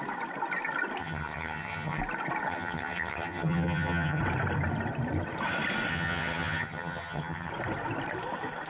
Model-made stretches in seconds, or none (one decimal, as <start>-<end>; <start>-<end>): 1.0-2.0; 2.5-4.2; 5.9-7.5